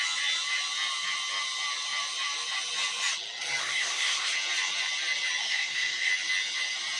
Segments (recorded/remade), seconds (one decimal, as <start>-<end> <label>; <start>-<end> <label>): 0.0-3.6 recorded; 3.6-4.3 remade; 4.3-5.4 recorded; 5.4-6.1 remade; 6.1-7.0 recorded